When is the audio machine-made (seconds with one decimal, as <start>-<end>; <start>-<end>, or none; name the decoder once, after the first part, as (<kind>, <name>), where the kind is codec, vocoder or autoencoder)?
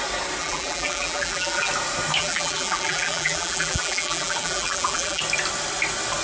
0.4-1.7 (vocoder, BigVGAN v2); 2.2-5.2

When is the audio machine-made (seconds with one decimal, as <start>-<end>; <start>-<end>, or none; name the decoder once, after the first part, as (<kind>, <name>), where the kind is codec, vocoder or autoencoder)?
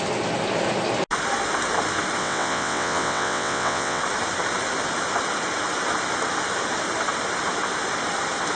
2.2-4.0 (vocoder, WaveNeXt)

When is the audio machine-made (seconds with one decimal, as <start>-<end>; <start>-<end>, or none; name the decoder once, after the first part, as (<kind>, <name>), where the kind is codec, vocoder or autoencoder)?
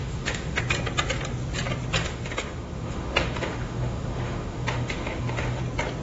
0.0-0.6 (autoencoder, DAC-VAE); 2.0-5.6